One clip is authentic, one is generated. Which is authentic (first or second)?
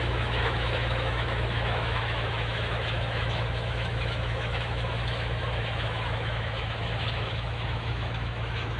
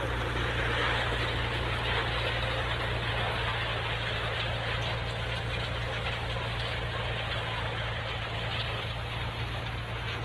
second